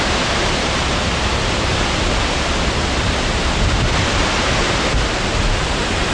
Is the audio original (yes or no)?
yes